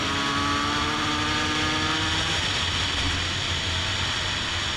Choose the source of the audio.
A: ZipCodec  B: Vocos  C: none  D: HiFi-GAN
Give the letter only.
C